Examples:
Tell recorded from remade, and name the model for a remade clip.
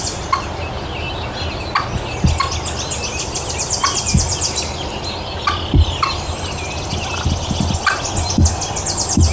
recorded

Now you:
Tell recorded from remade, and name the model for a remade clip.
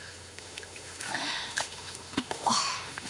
remade, autoencoder, DAC-VAE